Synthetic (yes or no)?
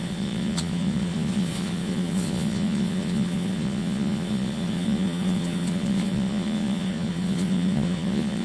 yes